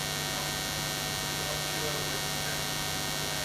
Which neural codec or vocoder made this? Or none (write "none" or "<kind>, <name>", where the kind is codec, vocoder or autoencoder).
none